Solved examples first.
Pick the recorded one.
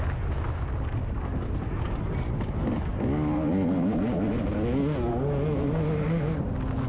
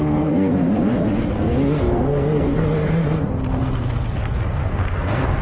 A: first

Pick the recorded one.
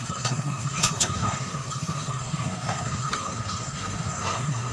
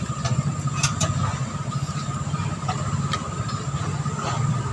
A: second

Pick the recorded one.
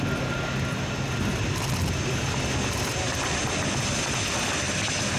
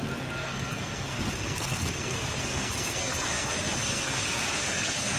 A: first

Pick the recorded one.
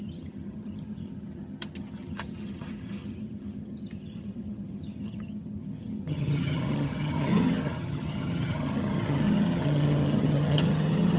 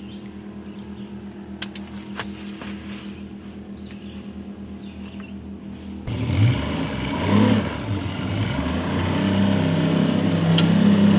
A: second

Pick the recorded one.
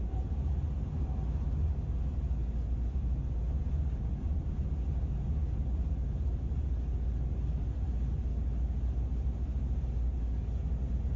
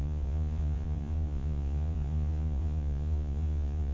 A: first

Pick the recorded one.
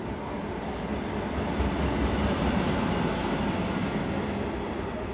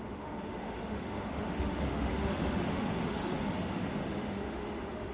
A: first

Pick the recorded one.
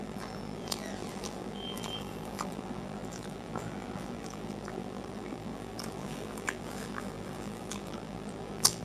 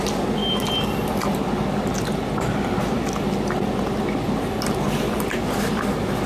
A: second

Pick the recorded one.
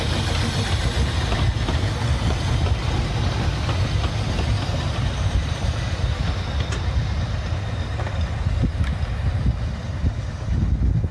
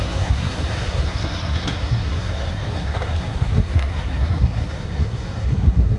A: first